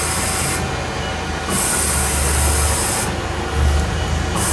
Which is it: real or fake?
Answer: real